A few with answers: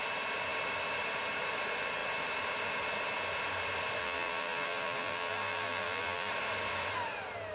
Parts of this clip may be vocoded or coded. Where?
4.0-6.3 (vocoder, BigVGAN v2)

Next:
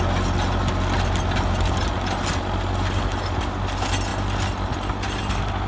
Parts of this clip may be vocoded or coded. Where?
none

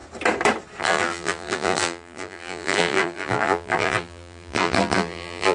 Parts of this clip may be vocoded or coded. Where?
0.8-5.5 (vocoder, BigVGAN v2)